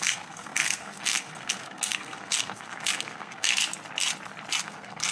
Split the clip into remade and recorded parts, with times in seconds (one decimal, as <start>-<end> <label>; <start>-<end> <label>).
0.0-3.6 remade; 3.6-4.6 recorded; 4.6-5.1 remade